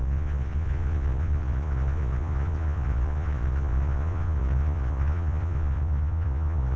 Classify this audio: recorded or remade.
remade